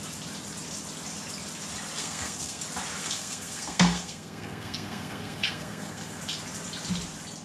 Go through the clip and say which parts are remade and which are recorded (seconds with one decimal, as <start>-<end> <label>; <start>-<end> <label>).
0.0-2.0 recorded; 2.0-2.6 remade; 2.6-3.0 recorded; 3.0-6.2 remade; 6.2-7.4 recorded